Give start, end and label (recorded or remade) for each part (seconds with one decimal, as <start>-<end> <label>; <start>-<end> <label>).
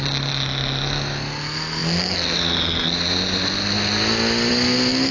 0.0-5.1 recorded